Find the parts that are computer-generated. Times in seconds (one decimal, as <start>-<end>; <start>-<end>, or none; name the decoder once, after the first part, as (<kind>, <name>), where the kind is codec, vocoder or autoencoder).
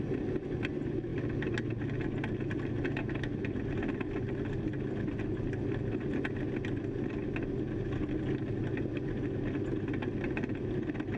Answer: none